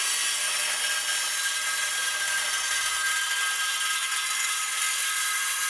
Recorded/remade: recorded